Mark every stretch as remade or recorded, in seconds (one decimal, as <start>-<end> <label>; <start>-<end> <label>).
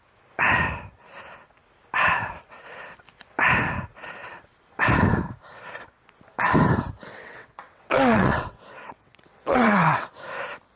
0.0-7.1 recorded; 7.1-10.1 remade; 10.1-10.8 recorded